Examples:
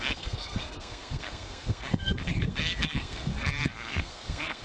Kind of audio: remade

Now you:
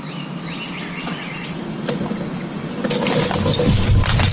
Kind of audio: recorded